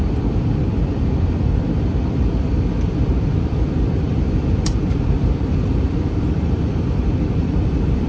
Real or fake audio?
fake